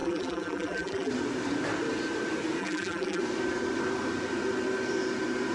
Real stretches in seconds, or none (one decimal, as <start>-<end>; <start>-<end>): 1.1-2.6; 3.2-5.5